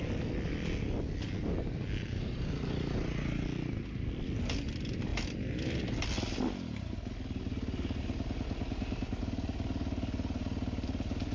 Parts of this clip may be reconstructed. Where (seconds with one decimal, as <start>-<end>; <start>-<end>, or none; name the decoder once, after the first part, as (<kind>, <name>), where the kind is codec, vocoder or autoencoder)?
none